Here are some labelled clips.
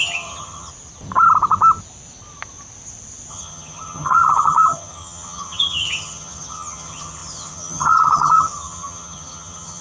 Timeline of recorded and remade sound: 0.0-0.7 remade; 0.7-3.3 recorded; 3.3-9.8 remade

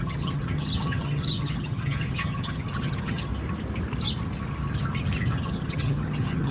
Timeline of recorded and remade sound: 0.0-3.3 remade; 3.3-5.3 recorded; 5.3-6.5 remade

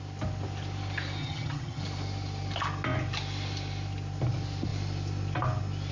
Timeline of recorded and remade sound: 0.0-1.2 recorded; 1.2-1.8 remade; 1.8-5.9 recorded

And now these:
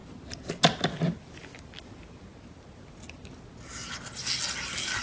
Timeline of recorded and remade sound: 0.0-5.0 recorded

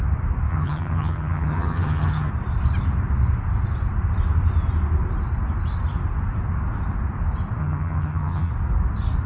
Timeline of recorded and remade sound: 0.0-0.5 recorded; 0.5-2.3 remade; 2.3-7.6 recorded; 7.6-8.5 remade; 8.5-9.3 recorded